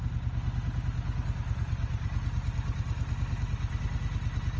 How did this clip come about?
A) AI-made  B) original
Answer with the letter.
B